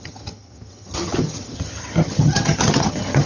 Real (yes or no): no